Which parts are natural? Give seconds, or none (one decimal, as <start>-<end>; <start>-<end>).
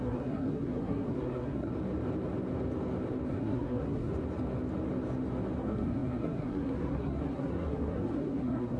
1.7-3.3; 4.1-5.6